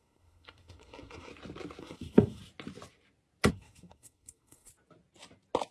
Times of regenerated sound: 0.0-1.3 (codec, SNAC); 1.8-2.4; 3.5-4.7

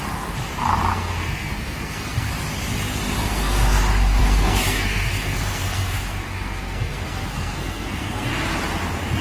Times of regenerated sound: 0.9-2.3 (codec, SNAC); 3.2-3.8; 4.2-8.3

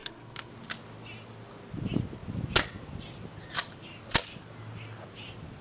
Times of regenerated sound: 0.0-0.5 (codec, SNAC)

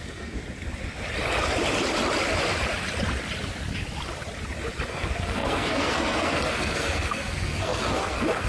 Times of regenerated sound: 0.0-0.4 (codec, SNAC); 4.9-8.5

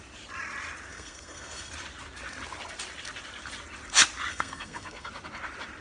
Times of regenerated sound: 0.9-1.7 (codec, SNAC); 4.3-5.1